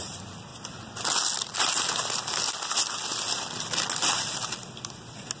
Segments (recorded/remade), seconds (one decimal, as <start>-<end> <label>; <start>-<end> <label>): 0.0-5.4 recorded